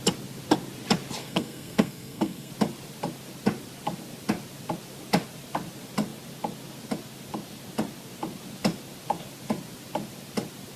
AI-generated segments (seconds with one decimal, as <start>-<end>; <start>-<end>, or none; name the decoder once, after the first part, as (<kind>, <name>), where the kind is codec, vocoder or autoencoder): 1.2-2.5 (codec, SNAC)